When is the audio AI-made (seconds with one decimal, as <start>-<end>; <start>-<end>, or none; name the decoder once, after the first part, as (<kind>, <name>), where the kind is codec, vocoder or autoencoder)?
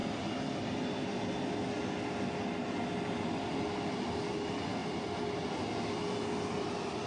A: 4.8-5.5 (vocoder, BigVGAN v2)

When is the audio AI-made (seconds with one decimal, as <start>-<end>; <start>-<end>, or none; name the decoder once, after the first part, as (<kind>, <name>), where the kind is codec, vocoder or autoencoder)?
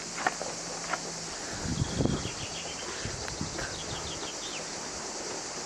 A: none